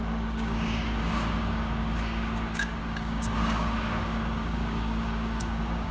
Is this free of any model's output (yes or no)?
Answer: no